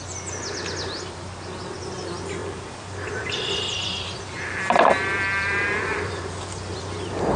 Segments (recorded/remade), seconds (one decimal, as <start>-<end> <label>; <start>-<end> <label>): 0.0-2.4 recorded; 2.4-6.8 remade; 6.8-7.4 recorded